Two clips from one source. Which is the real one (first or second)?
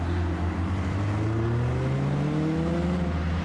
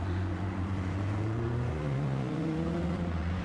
first